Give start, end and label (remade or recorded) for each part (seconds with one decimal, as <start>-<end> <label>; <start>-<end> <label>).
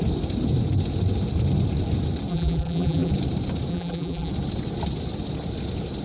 0.0-2.3 recorded; 2.3-3.1 remade; 3.1-3.7 recorded; 3.7-4.3 remade; 4.3-6.0 recorded